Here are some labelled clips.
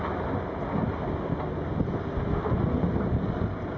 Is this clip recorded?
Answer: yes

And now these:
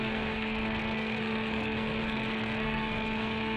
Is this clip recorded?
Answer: no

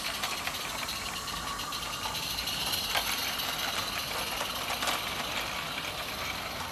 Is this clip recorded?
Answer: yes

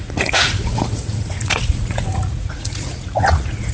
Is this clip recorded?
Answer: no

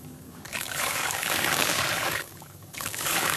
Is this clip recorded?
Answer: no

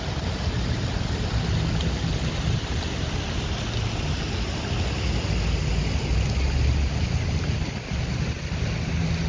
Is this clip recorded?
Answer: yes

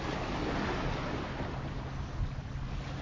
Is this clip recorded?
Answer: yes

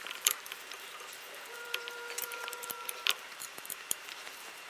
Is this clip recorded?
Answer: no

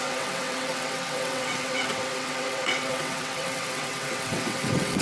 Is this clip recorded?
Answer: no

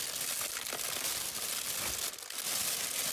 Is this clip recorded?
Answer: yes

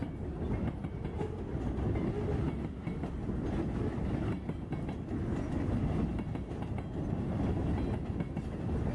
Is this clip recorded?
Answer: yes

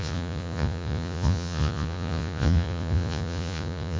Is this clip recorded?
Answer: no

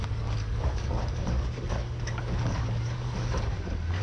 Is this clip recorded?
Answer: no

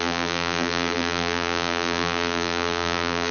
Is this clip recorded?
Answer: no